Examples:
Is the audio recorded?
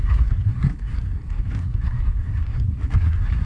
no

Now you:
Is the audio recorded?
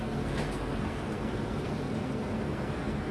no